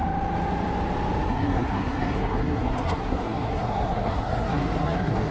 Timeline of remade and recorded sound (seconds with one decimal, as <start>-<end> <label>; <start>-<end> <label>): 0.0-1.3 recorded; 1.3-5.3 remade